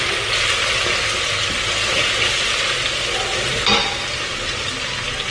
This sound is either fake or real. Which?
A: real